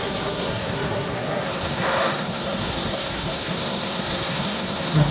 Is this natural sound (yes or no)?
no